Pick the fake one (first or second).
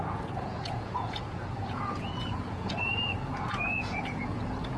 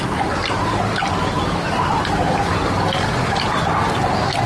first